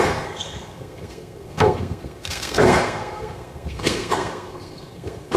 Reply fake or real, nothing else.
fake